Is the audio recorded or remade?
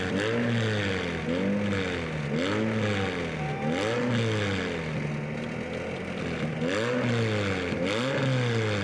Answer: recorded